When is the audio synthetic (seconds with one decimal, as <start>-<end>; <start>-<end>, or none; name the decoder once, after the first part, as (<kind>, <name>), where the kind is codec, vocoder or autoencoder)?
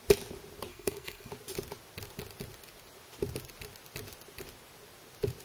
0.7-1.3 (codec, SNAC)